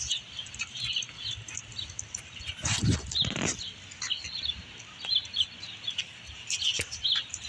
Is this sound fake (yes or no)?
no